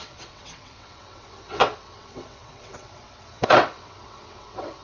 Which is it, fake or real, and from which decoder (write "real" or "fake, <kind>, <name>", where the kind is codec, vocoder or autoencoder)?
fake, vocoder, WaveNeXt